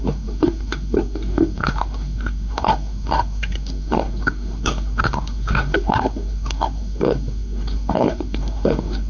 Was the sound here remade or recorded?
remade